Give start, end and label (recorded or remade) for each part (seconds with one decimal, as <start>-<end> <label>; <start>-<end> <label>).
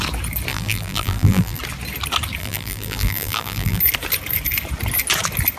0.0-0.5 recorded; 0.5-1.6 remade; 1.6-2.4 recorded; 2.4-3.8 remade; 3.8-5.6 recorded